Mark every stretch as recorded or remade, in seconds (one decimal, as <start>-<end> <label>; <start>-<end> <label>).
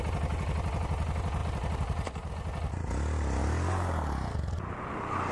0.0-1.4 recorded; 1.4-2.3 remade; 2.3-3.4 recorded; 3.4-4.6 remade; 4.6-5.3 recorded